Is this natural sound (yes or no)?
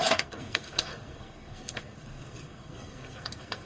no